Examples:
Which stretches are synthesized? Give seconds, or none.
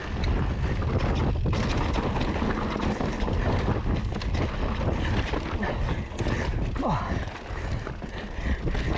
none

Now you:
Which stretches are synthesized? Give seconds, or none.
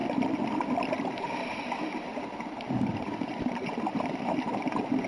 1.0-5.1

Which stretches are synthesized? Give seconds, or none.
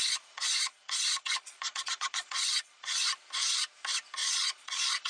0.0-3.1; 4.2-5.1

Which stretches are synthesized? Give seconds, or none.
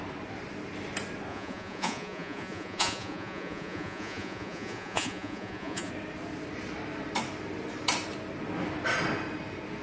1.3-5.9